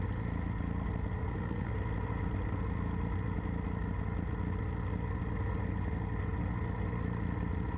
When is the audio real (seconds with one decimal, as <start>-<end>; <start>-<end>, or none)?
0.0-1.2; 1.7-7.8